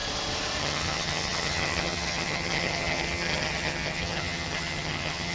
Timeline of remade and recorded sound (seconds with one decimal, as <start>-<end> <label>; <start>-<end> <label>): 0.0-0.6 recorded; 0.6-5.3 remade